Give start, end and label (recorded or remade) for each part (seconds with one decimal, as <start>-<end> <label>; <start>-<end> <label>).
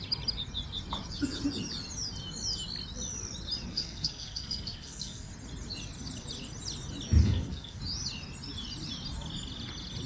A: 0.0-3.7 recorded; 3.7-5.3 remade; 5.3-7.2 recorded; 7.2-7.8 remade; 7.8-10.1 recorded